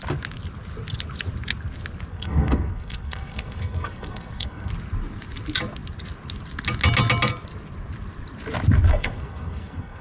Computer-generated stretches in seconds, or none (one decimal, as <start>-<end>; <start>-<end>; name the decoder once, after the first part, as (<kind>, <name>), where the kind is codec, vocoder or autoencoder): 2.1-4.7 (codec, SNAC); 8.9-10.0